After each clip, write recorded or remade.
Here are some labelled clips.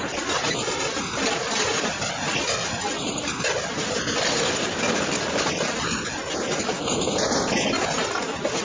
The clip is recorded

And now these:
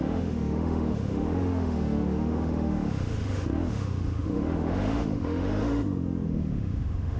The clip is remade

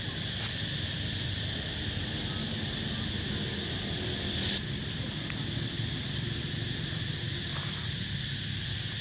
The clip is recorded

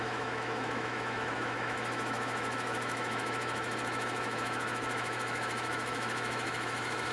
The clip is remade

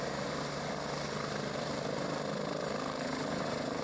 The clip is recorded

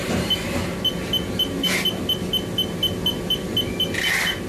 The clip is recorded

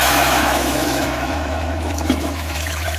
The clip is remade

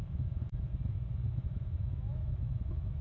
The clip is remade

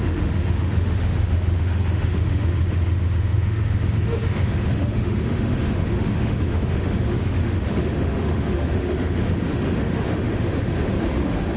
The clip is remade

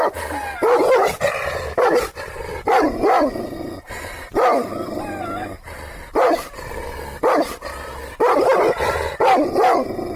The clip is recorded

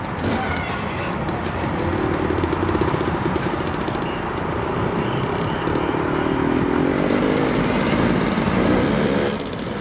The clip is recorded